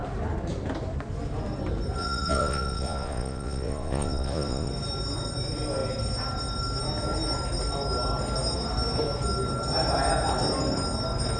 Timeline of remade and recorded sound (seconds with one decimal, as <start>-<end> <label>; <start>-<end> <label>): 0.0-2.0 recorded; 2.0-4.7 remade; 4.7-11.4 recorded